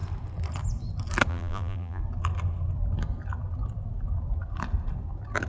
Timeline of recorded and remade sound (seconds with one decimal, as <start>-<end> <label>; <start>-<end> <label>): 0.0-1.3 recorded; 1.3-2.0 remade; 2.0-5.5 recorded